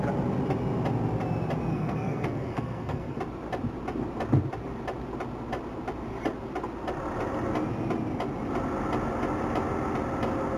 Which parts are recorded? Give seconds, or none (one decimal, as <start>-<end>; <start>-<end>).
0.0-1.7; 3.2-10.6

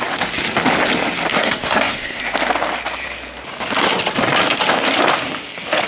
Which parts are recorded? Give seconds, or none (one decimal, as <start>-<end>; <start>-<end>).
0.0-1.3; 2.2-5.9